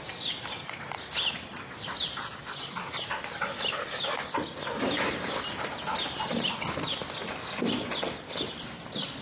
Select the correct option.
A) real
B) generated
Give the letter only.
A